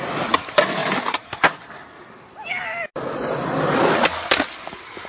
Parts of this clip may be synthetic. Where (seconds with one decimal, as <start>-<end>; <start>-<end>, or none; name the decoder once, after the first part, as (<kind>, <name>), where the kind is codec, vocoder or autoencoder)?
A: none